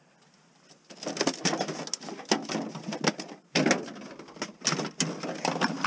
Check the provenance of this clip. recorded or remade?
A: recorded